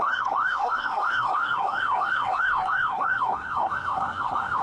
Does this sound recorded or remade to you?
remade